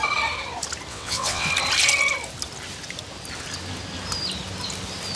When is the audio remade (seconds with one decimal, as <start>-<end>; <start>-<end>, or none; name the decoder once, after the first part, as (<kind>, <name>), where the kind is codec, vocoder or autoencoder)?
0.9-1.5 (vocoder, WaveNeXt)